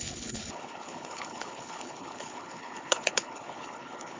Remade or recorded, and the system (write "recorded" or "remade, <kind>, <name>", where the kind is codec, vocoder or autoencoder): remade, codec, HILCodec